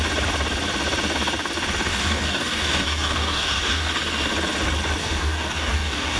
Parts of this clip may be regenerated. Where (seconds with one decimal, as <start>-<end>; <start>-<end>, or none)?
1.9-3.9; 5.0-6.2